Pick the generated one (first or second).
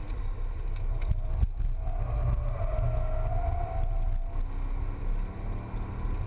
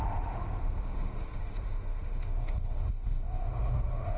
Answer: second